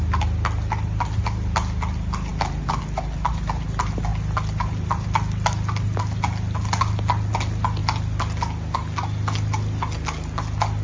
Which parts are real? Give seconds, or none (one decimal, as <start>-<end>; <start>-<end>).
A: 0.0-10.8